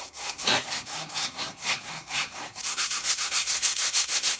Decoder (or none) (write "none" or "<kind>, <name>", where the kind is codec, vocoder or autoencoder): codec, SNAC